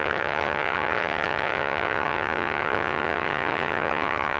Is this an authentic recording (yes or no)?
no